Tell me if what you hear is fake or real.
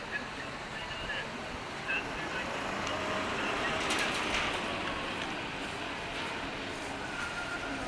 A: real